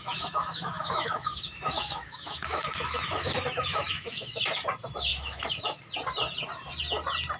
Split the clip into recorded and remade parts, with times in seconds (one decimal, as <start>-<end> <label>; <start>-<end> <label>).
0.0-4.4 remade; 4.4-5.1 recorded; 5.1-5.8 remade; 5.8-7.4 recorded